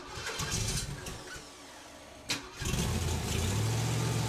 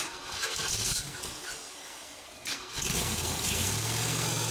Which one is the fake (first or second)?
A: second